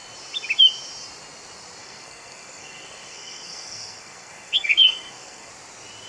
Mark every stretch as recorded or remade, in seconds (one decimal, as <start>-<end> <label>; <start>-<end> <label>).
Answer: 0.0-1.8 recorded; 1.8-5.5 remade; 5.5-6.1 recorded